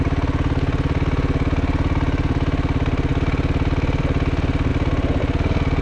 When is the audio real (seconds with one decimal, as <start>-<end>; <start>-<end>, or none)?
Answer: 0.0-5.8